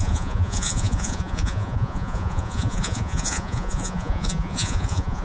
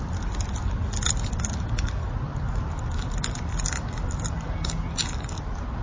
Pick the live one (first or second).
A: second